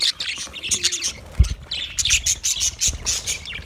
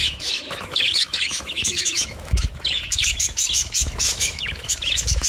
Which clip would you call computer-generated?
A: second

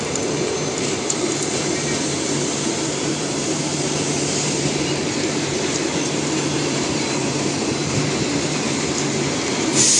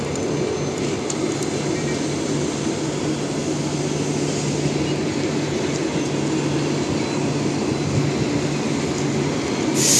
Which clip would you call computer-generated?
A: first